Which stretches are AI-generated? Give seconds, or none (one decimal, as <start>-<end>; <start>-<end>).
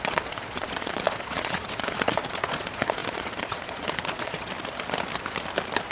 0.0-4.5